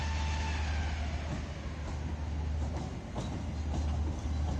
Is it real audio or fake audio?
real